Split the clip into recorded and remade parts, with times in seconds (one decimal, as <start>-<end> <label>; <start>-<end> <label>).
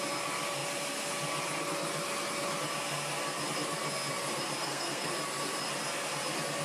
0.0-4.6 recorded; 4.6-5.1 remade; 5.1-6.6 recorded